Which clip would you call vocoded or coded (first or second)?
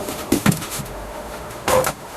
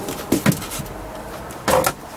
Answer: first